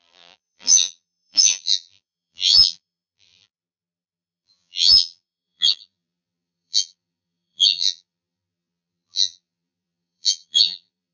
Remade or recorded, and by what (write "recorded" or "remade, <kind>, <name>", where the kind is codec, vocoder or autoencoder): remade, vocoder, BigVGAN v2